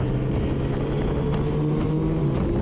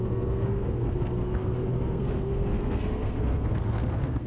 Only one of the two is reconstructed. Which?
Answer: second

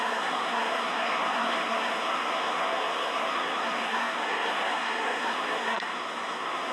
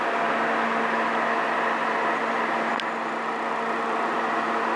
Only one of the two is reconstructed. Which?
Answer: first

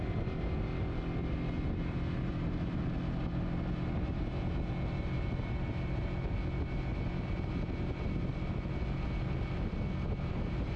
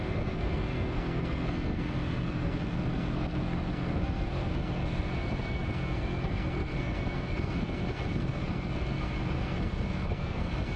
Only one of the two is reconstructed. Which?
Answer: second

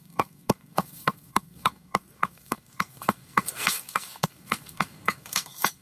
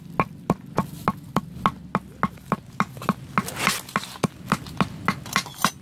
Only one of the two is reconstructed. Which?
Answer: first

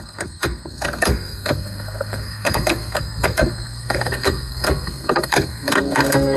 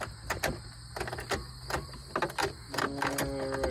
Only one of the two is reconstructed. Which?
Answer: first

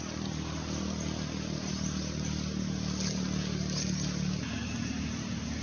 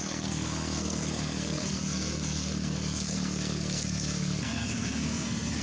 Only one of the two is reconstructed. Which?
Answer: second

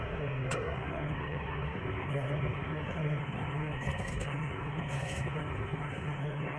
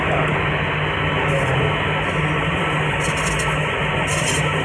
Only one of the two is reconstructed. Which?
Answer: first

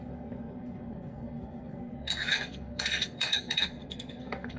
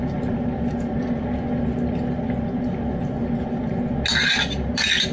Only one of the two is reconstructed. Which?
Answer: first